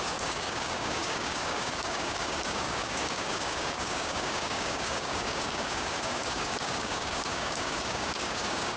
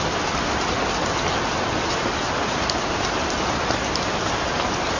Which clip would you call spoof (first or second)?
first